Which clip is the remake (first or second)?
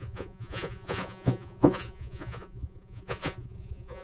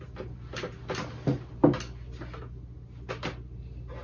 first